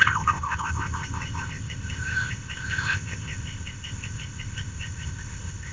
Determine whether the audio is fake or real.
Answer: fake